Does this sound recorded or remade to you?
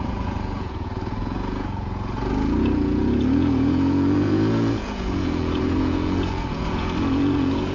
remade